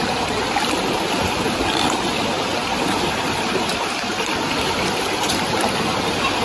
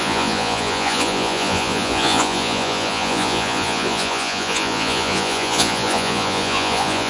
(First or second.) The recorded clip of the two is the first